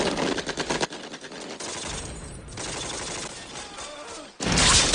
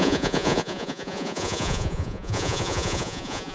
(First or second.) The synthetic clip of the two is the second